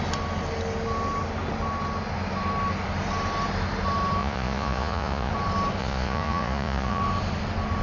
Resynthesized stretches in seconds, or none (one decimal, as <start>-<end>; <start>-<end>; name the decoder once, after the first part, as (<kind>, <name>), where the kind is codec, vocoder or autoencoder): 4.2-5.3 (vocoder, Vocos); 5.8-7.0